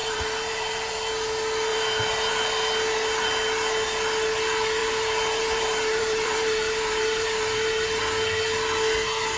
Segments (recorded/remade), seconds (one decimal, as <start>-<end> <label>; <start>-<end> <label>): 0.0-0.9 remade; 0.9-1.7 recorded; 1.7-2.3 remade; 2.3-4.8 recorded; 4.8-8.0 remade; 8.0-9.4 recorded